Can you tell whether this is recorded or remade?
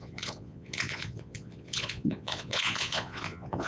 remade